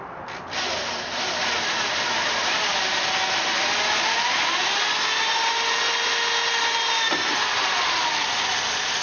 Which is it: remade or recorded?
remade